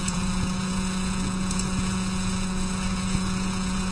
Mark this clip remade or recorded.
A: remade